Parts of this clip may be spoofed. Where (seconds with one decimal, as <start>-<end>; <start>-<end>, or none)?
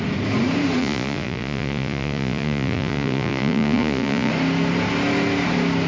0.8-4.3